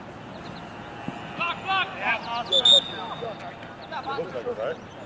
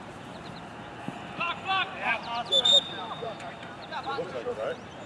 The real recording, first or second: first